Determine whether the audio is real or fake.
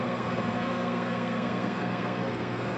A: fake